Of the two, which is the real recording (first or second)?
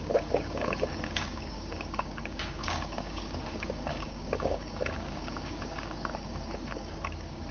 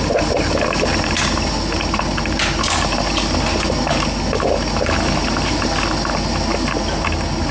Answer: second